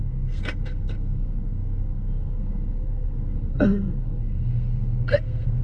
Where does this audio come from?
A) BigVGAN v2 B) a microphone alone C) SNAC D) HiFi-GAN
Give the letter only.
C